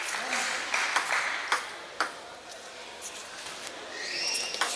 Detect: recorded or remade recorded